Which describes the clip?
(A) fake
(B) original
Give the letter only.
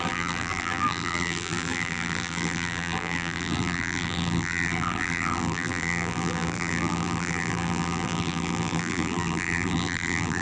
A